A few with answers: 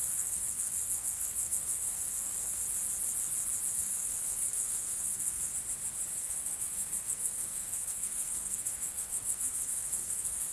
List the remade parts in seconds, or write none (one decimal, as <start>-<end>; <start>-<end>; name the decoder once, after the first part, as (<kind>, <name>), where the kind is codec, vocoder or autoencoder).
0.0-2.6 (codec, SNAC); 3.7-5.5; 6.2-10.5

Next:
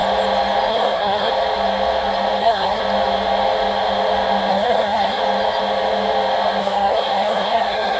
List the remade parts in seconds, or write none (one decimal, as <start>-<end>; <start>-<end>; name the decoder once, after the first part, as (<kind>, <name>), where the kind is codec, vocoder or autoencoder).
0.7-1.3 (codec, SNAC); 2.4-2.8; 4.5-5.2; 6.6-8.0

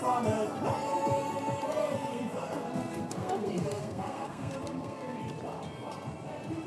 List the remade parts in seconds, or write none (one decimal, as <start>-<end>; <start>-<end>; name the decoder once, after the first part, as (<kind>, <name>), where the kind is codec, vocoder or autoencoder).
1.8-5.2 (codec, SNAC)